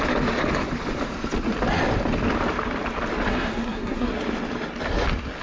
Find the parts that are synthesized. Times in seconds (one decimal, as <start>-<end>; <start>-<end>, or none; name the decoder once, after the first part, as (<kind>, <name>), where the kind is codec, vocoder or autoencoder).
3.3-4.1 (codec, SNAC)